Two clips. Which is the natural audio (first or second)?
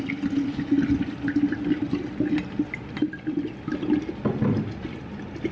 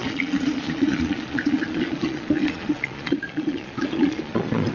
first